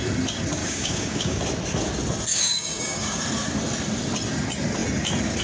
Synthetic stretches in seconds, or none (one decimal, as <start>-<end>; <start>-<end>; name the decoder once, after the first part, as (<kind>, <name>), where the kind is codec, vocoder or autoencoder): 0.6-1.4 (codec, DAC); 2.3-3.2